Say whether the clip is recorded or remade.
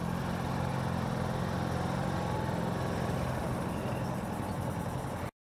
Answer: recorded